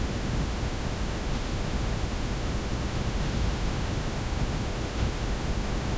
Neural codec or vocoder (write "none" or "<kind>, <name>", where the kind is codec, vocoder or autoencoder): autoencoder, DAC-VAE